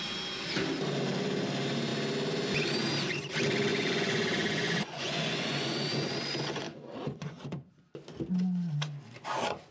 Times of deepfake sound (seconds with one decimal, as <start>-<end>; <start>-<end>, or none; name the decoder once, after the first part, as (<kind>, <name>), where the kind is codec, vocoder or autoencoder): 3.7-7.7 (vocoder, Vocos)